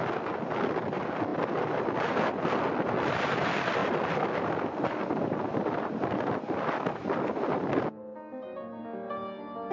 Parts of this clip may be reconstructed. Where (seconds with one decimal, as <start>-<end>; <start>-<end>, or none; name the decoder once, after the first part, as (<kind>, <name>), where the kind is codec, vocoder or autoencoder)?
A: none